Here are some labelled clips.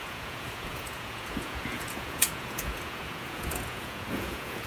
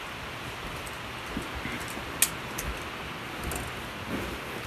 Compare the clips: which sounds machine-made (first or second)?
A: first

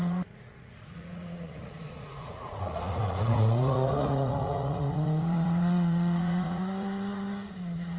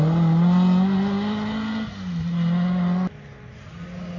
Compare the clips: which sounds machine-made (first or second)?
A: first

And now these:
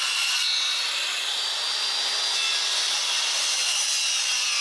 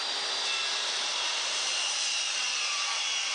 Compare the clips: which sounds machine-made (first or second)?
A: second